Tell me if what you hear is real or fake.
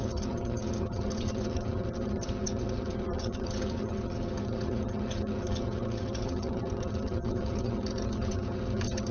fake